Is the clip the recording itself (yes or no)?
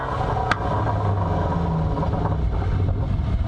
yes